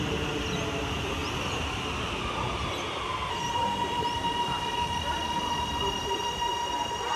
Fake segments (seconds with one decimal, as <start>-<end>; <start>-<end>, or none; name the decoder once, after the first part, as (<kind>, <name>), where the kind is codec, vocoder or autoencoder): none